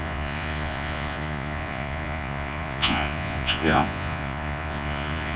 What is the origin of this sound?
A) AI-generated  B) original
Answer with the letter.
A